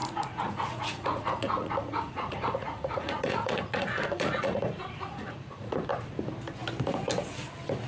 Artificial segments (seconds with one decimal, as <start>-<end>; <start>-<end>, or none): 0.0-4.6; 5.1-5.8